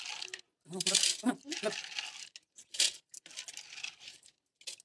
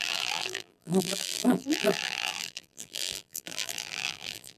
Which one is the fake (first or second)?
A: second